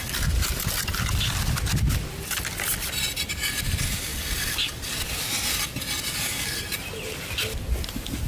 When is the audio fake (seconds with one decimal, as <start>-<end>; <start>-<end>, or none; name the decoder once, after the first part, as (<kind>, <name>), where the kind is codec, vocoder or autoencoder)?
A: none